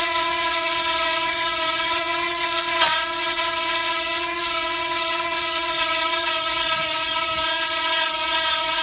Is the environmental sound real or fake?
fake